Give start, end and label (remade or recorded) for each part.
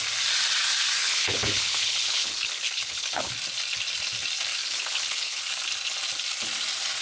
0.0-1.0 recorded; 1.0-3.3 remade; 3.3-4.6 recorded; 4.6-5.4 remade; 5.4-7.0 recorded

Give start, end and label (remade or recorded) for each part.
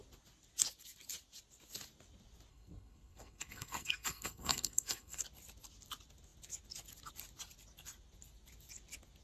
0.0-2.5 recorded; 2.5-5.2 remade; 5.2-9.2 recorded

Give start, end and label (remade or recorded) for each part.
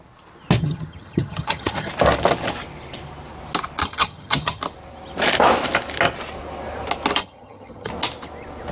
0.0-0.6 recorded; 0.6-1.9 remade; 1.9-3.8 recorded; 3.8-4.6 remade; 4.6-7.2 recorded; 7.2-7.9 remade; 7.9-8.7 recorded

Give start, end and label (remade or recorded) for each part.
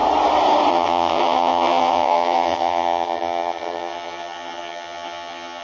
0.0-0.7 recorded; 0.7-5.6 remade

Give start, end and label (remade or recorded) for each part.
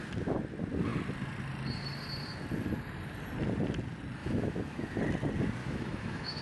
0.0-4.2 recorded; 4.2-5.0 remade; 5.0-5.6 recorded; 5.6-6.4 remade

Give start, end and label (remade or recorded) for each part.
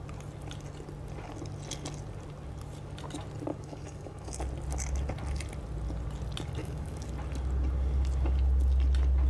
0.0-3.5 recorded; 3.5-4.4 remade; 4.4-6.6 recorded; 6.6-7.1 remade; 7.1-9.3 recorded